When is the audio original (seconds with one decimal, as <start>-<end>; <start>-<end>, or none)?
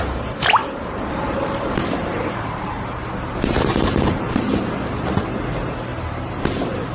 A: 0.0-0.6; 2.7-6.9